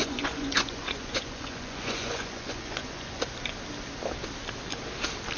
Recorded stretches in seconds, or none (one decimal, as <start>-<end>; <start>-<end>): 3.2-5.4